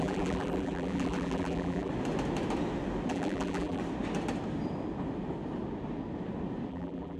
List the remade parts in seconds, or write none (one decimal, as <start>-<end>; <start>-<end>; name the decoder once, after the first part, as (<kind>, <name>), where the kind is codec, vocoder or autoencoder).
0.0-1.9 (vocoder, BigVGAN v2); 3.1-3.8; 6.7-7.2